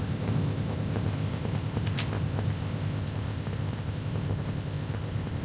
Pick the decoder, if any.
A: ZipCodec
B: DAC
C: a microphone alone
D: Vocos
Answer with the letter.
A